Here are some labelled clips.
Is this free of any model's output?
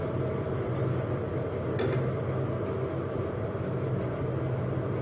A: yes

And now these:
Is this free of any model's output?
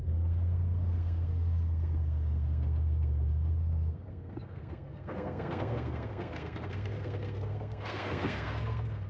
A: no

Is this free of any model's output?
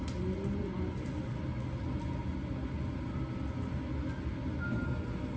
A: yes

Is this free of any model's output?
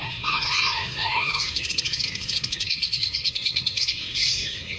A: no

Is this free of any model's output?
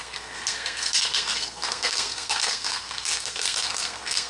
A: no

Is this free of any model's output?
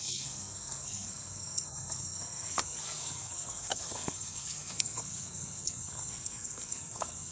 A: no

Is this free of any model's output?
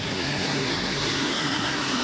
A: no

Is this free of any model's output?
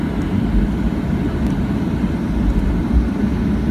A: yes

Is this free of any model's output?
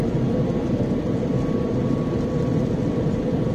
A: yes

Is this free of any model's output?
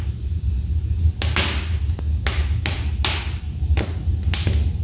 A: yes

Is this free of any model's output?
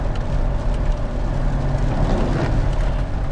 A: yes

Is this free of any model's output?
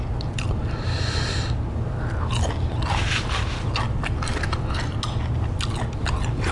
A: yes